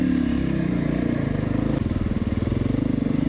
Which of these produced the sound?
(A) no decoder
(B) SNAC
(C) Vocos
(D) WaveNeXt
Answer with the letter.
A